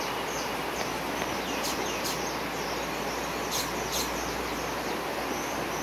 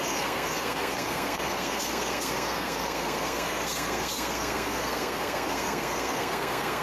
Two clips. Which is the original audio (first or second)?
first